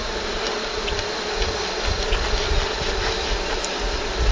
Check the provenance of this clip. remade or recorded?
recorded